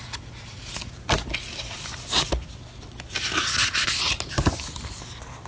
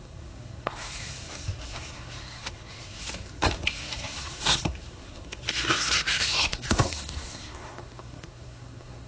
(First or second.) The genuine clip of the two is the first